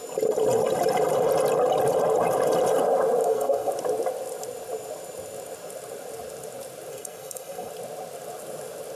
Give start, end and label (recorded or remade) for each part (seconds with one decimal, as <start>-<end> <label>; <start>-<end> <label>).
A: 0.0-3.2 recorded; 3.2-3.7 remade; 3.7-6.9 recorded; 6.9-7.7 remade; 7.7-8.9 recorded